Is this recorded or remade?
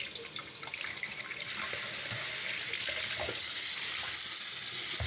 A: recorded